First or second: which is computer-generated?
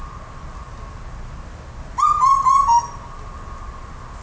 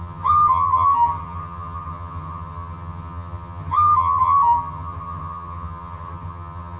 second